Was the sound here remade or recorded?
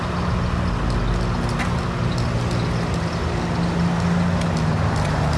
recorded